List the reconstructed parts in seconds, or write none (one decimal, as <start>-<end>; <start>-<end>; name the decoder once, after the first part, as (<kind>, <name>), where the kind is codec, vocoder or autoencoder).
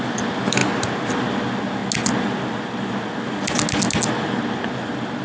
none